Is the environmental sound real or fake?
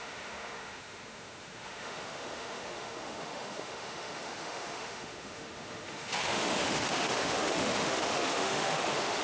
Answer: fake